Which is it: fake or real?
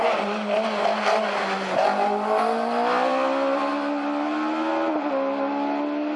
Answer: real